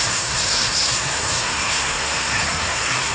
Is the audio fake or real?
fake